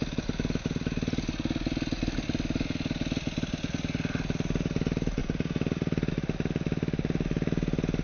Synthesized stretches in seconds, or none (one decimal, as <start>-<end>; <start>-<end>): none